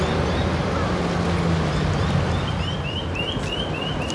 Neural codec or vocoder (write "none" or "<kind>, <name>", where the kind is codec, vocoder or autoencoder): none